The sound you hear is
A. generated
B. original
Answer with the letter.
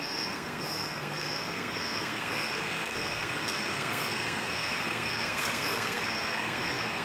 A